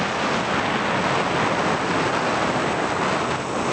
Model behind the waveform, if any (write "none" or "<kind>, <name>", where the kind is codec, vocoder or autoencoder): none